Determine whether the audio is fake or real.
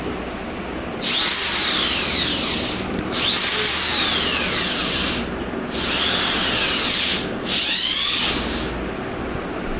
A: real